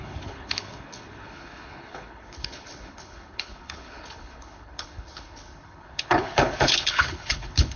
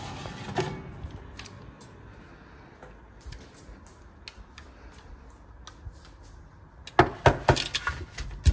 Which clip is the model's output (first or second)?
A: first